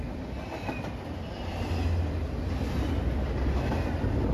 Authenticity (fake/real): real